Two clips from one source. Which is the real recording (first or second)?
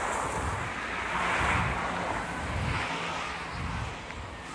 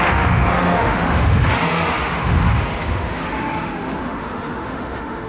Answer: first